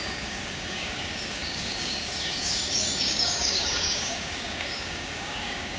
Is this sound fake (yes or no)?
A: yes